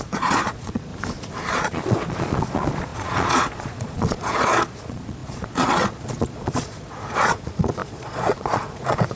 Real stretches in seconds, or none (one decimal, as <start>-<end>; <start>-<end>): 0.9-1.5